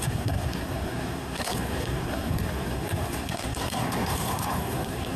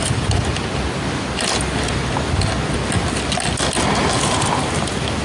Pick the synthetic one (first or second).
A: first